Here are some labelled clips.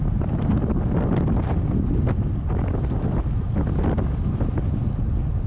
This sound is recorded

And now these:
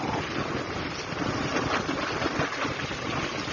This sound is recorded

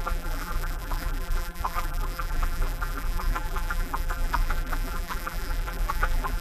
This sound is remade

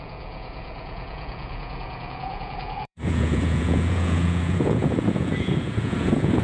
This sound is remade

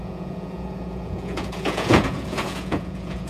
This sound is remade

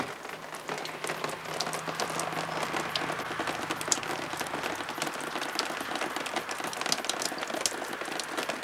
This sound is recorded